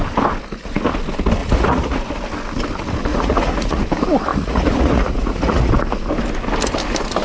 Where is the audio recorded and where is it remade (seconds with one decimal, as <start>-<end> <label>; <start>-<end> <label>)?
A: 0.0-1.4 recorded; 1.4-2.1 remade; 2.1-3.1 recorded; 3.1-3.8 remade; 3.8-4.3 recorded; 4.3-5.7 remade; 5.7-7.2 recorded